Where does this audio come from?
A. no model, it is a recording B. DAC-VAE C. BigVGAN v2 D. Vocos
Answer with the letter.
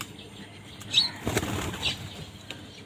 A